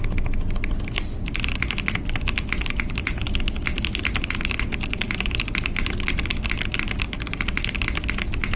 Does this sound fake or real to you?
real